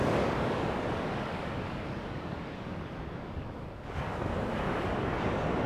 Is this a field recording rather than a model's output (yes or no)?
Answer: no